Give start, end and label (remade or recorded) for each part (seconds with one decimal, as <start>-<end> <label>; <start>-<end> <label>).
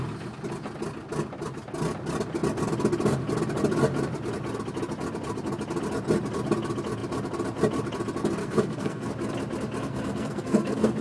0.0-8.4 recorded; 8.4-9.1 remade; 9.1-9.8 recorded; 9.8-11.0 remade